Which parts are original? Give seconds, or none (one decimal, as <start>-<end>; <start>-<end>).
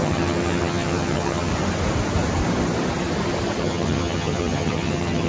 1.5-3.6